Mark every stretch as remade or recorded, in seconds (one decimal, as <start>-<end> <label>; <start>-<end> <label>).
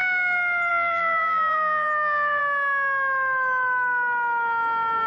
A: 0.0-0.7 recorded; 0.7-2.4 remade; 2.4-5.1 recorded